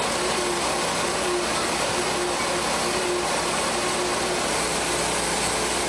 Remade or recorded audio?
recorded